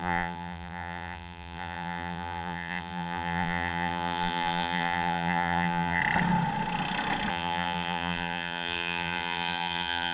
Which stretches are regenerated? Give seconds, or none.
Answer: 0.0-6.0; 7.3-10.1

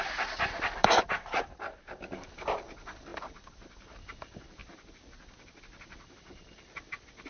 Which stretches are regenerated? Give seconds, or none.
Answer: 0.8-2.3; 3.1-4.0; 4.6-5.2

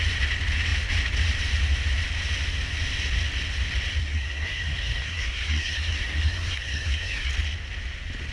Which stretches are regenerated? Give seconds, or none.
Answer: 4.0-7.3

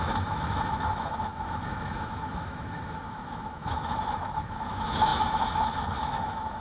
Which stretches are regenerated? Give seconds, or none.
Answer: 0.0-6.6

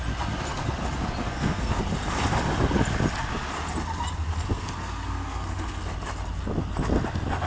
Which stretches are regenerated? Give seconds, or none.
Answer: 1.2-1.8; 4.5-5.8

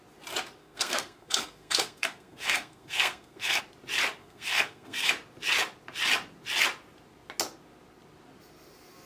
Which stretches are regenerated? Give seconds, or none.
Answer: 0.6-3.6; 4.2-5.1

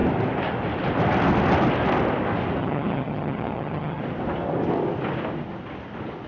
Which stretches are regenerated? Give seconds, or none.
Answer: 2.6-4.0